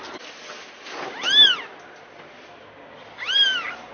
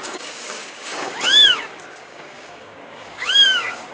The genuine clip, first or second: first